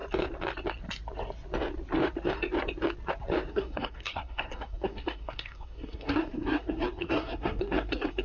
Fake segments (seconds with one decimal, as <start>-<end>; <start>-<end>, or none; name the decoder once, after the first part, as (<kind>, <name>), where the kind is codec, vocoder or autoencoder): 3.5-8.2 (codec, SNAC)